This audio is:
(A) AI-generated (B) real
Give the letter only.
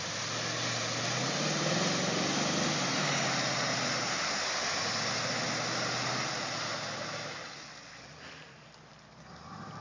B